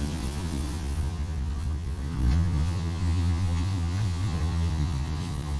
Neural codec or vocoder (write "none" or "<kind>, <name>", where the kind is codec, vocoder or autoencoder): vocoder, Vocos